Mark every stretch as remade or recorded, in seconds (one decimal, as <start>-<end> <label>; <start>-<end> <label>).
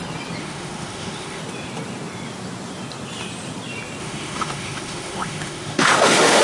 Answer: 0.0-0.4 recorded; 0.4-1.4 remade; 1.4-4.0 recorded; 4.0-6.4 remade